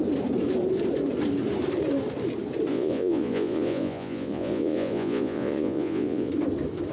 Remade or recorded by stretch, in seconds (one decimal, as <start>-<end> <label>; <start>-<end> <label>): 0.0-2.7 recorded; 2.7-6.3 remade; 6.3-6.9 recorded